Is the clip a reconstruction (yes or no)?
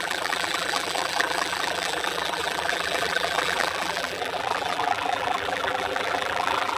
yes